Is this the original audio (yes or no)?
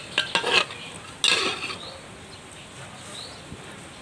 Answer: yes